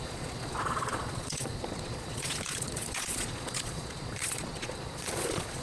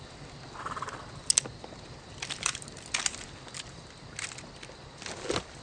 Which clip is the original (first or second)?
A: second